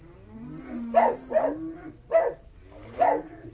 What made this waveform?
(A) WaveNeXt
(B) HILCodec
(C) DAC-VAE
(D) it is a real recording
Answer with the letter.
D